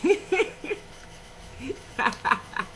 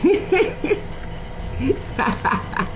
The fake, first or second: first